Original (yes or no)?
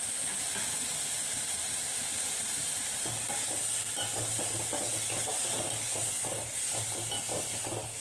yes